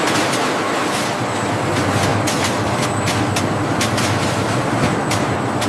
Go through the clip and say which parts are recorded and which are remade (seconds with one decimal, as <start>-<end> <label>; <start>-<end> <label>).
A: 0.0-5.7 recorded

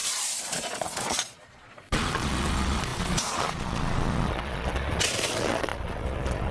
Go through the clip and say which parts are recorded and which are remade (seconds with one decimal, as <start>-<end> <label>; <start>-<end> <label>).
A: 0.0-6.5 remade

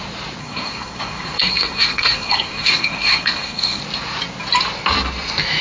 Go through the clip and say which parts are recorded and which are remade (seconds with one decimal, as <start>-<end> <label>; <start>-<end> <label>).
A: 0.0-0.4 recorded; 0.4-3.8 remade; 3.8-5.6 recorded

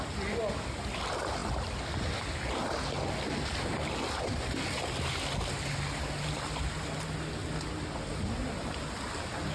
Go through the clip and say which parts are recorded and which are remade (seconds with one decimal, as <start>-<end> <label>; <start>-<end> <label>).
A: 0.0-9.5 recorded